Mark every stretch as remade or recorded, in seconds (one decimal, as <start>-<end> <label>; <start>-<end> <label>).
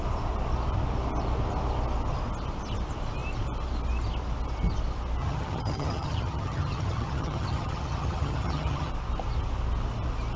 0.0-5.2 recorded; 5.2-8.9 remade; 8.9-10.4 recorded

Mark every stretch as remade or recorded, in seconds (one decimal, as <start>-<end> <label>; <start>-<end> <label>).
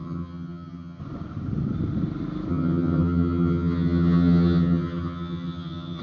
0.0-1.0 remade; 1.0-2.5 recorded; 2.5-6.0 remade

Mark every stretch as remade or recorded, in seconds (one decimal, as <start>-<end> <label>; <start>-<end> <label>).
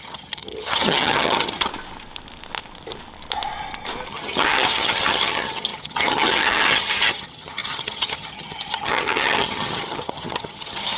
0.0-1.7 remade; 1.7-4.1 recorded; 4.1-11.0 remade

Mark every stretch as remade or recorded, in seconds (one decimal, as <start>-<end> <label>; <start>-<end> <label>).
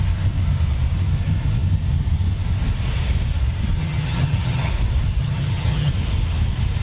0.0-3.8 recorded; 3.8-4.7 remade; 4.7-5.2 recorded; 5.2-5.9 remade; 5.9-6.8 recorded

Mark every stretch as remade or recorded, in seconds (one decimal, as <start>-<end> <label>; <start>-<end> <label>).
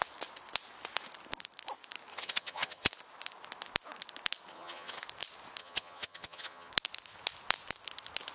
0.0-2.1 recorded; 2.1-2.9 remade; 2.9-4.5 recorded; 4.5-5.0 remade; 5.0-5.6 recorded; 5.6-6.7 remade; 6.7-8.3 recorded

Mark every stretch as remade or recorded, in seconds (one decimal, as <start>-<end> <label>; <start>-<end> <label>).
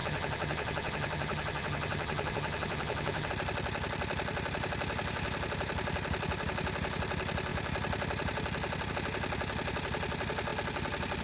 0.0-3.3 remade; 3.3-11.2 recorded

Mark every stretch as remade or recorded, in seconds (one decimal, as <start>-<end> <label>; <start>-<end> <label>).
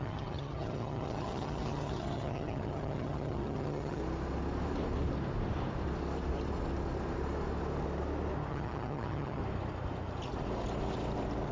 0.0-4.0 remade; 4.0-8.5 recorded; 8.5-9.4 remade; 9.4-11.5 recorded